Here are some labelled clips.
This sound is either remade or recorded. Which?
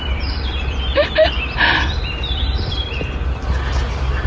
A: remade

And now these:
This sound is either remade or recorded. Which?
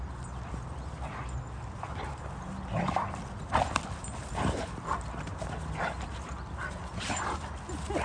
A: recorded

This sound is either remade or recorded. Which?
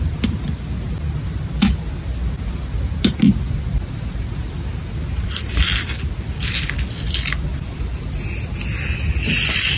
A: recorded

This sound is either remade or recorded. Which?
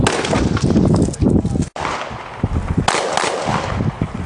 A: recorded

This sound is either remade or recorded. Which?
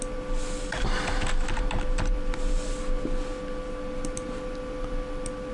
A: recorded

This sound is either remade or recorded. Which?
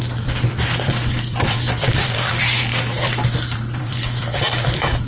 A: remade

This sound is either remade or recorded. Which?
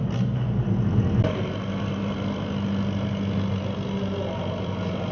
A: recorded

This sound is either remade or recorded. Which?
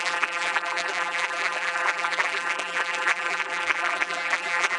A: remade